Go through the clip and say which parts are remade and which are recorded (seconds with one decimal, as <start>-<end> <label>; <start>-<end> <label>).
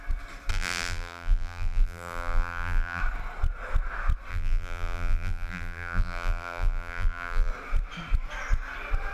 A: 0.0-0.5 recorded; 0.5-3.0 remade; 3.0-4.3 recorded; 4.3-7.5 remade; 7.5-9.1 recorded